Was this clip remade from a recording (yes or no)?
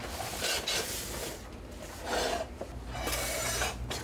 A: no